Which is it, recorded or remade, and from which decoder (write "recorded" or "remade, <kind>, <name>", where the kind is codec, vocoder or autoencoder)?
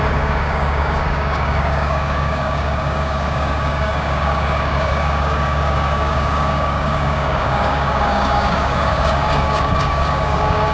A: remade, codec, DAC